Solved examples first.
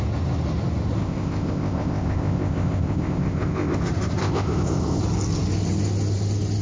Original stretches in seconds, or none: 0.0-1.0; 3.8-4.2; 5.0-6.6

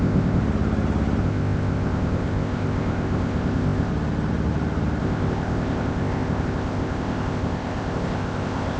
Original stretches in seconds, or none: 0.4-1.2; 3.9-5.0

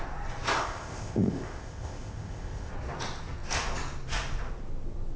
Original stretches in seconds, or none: 0.0-0.6; 2.7-5.2

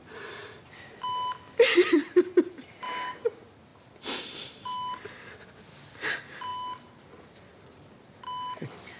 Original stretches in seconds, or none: 0.0-9.0

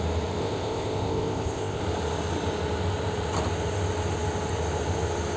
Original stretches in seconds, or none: 0.0-0.4; 1.8-5.4

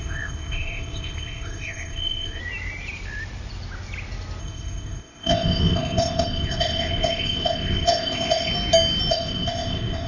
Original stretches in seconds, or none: 2.4-4.4; 8.5-9.1

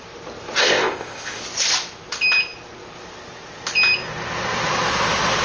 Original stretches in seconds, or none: 0.0-0.6; 1.4-5.4